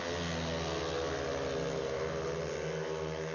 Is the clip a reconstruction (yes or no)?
no